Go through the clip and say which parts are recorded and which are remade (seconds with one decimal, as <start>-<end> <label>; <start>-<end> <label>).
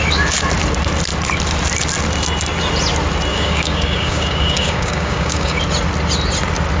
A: 0.0-3.3 recorded; 3.3-5.6 remade; 5.6-6.8 recorded